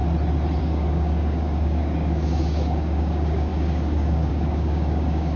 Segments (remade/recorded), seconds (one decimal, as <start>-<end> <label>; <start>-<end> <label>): 0.0-0.6 recorded; 0.6-5.4 remade